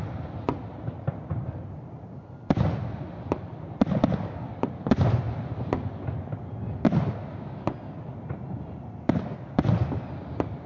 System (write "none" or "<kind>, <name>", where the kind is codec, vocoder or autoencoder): none